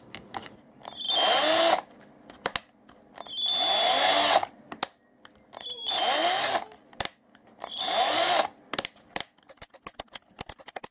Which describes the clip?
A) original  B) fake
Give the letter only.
A